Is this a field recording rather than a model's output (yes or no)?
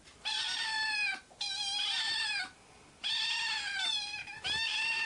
yes